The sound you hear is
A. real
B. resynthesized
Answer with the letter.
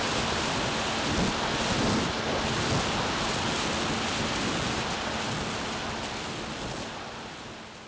A